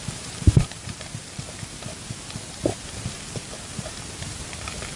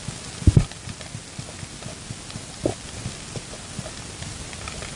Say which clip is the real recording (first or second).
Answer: second